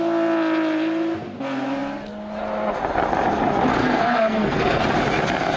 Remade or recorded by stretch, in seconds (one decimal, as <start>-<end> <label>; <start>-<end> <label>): 0.0-3.8 recorded; 3.8-4.8 remade; 4.8-5.6 recorded